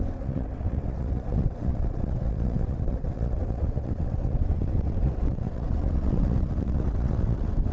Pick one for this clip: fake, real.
fake